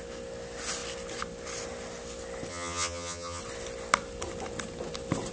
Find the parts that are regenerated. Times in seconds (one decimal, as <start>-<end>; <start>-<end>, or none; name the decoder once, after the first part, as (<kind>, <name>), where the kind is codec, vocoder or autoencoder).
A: 2.5-3.4 (vocoder, HiFi-GAN)